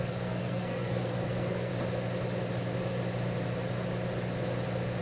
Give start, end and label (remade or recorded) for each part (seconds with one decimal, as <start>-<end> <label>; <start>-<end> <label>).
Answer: 0.0-1.7 remade; 1.7-5.0 recorded